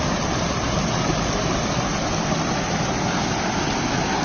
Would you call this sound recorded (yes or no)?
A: yes